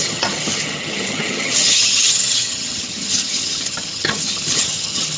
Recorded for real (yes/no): no